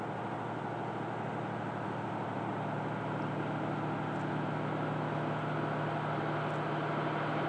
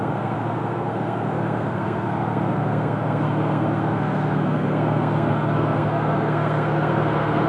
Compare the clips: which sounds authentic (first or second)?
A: first